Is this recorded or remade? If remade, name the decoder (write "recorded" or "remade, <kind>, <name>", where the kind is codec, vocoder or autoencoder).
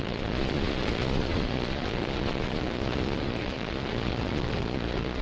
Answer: remade, vocoder, Vocos